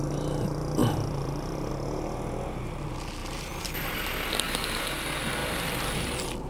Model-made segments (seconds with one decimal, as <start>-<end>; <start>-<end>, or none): 0.8-1.7; 3.2-4.8; 5.4-6.5